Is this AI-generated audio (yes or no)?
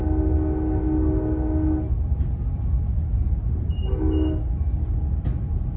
no